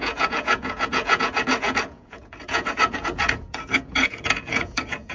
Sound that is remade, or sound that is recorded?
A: remade